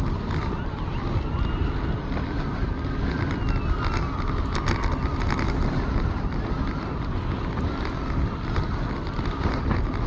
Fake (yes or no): no